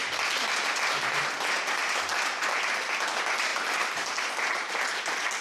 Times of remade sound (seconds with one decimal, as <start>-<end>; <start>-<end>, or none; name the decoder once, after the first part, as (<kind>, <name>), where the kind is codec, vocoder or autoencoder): 0.0-1.2 (vocoder, BigVGAN v2); 1.8-3.0; 3.5-4.3